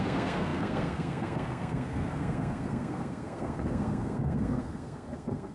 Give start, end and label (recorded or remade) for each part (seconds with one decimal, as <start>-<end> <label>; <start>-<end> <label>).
0.0-5.5 remade